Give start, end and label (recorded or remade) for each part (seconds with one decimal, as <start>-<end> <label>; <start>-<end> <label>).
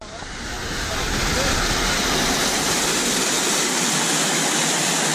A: 0.0-5.1 recorded